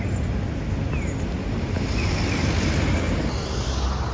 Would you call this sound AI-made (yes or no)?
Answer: no